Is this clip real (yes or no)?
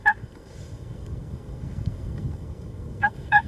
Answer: no